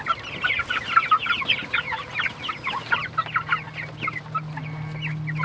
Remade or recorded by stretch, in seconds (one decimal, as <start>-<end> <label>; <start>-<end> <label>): 0.0-5.4 recorded